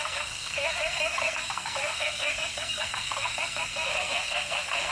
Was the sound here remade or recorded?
remade